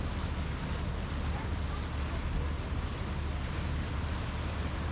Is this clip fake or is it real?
real